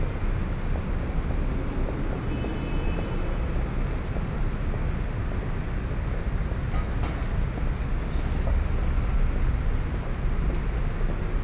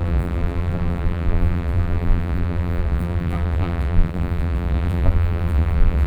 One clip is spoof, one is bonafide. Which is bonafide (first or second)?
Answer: first